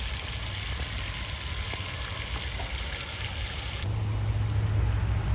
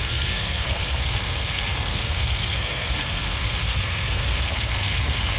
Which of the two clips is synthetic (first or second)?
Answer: second